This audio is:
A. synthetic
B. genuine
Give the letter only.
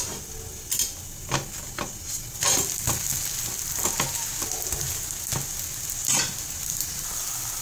B